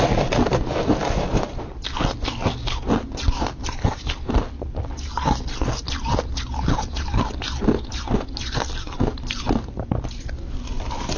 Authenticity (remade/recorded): recorded